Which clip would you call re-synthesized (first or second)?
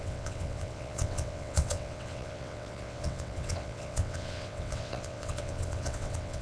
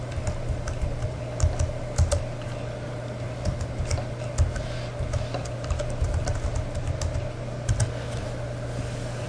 first